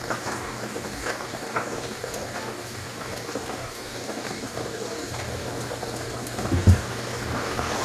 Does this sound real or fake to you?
fake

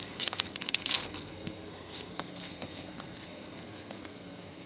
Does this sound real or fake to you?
fake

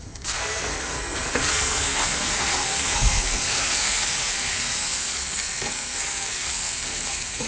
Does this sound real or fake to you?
fake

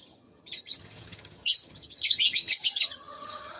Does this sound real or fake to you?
fake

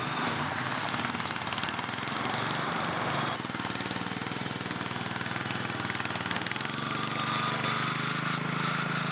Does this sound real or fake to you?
real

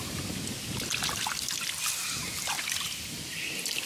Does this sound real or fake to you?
real